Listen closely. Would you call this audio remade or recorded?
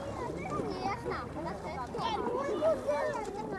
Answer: recorded